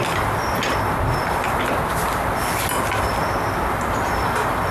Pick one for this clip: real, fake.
real